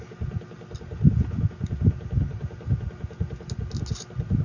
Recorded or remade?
recorded